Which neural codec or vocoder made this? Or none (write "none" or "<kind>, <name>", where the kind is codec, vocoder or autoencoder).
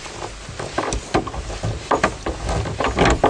none